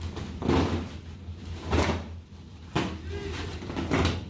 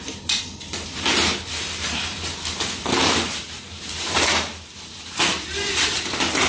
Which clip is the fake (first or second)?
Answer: second